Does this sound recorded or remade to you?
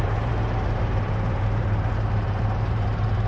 remade